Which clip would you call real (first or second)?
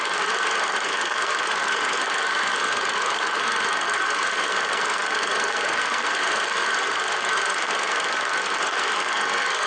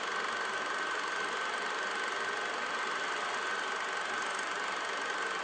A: second